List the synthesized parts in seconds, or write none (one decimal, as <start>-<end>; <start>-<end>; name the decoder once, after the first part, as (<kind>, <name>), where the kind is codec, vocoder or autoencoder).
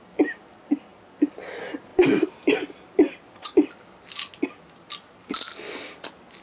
none